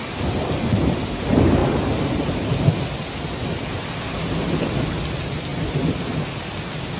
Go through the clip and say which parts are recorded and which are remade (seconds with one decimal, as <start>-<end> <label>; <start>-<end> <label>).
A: 0.0-1.6 recorded; 1.6-2.3 remade; 2.3-7.0 recorded